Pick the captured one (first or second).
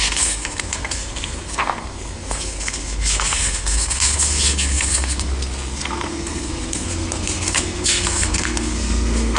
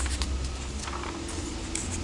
second